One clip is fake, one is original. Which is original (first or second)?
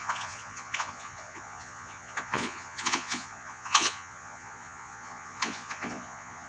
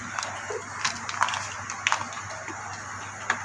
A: second